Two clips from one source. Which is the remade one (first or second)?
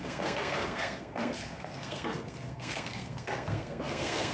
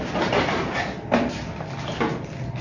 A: first